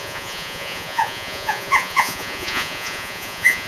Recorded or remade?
remade